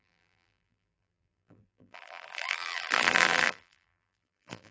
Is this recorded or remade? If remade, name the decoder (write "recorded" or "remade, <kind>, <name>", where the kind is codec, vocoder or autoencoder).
remade, vocoder, BigVGAN v2